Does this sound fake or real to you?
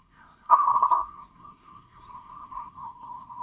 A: fake